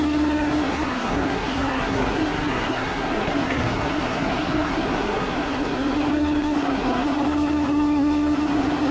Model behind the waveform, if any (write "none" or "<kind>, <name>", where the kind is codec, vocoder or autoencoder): codec, SNAC